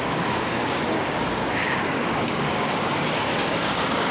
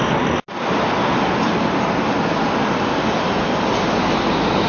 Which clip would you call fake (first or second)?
first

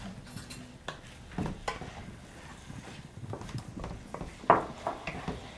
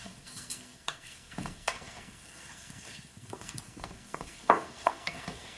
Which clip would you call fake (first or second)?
second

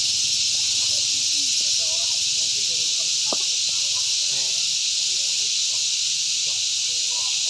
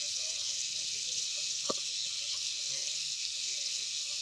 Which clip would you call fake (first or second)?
second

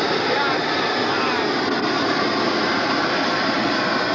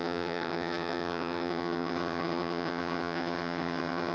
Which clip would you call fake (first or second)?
second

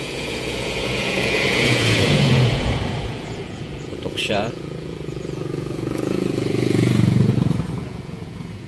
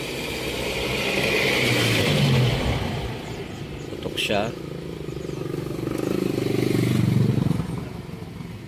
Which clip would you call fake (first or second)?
first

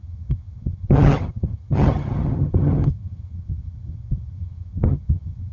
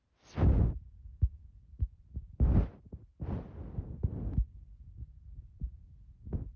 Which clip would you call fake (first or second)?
first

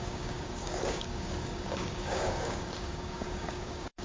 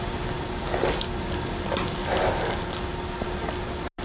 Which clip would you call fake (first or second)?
first